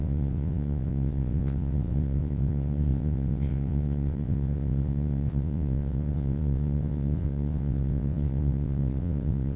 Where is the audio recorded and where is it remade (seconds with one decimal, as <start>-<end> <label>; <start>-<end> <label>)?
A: 0.0-9.6 remade

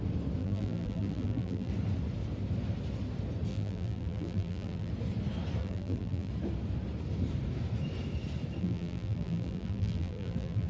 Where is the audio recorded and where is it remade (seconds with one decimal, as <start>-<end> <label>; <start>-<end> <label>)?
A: 0.0-0.4 recorded; 0.4-1.7 remade; 1.7-3.5 recorded; 3.5-4.9 remade; 4.9-5.6 recorded; 5.6-6.3 remade; 6.3-8.6 recorded; 8.6-10.7 remade

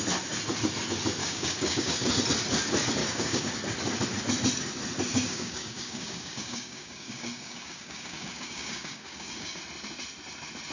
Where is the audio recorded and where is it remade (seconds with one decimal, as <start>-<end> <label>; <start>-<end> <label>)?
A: 0.0-1.2 recorded; 1.2-2.1 remade; 2.1-3.0 recorded; 3.0-3.5 remade; 3.5-5.1 recorded; 5.1-9.6 remade; 9.6-10.7 recorded

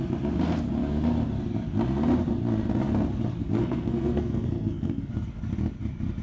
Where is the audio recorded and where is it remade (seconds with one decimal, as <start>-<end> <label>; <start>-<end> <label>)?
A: 0.0-3.4 recorded; 3.4-5.1 remade; 5.1-6.2 recorded

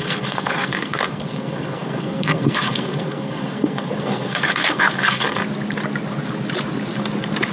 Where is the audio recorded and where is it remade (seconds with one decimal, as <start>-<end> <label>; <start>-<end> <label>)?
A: 0.0-5.4 remade; 5.4-7.5 recorded

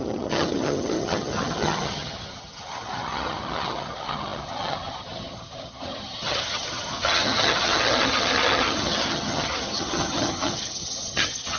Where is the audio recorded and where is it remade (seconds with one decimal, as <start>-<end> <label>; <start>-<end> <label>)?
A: 0.0-11.6 remade

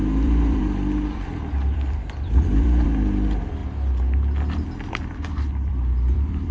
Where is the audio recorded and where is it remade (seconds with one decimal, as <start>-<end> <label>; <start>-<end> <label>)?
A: 0.0-3.6 remade; 3.6-4.9 recorded; 4.9-6.5 remade